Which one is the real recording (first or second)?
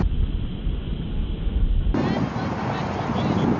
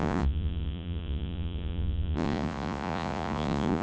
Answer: first